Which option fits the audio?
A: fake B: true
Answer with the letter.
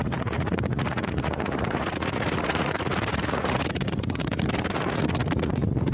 A